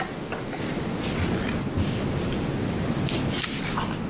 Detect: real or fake real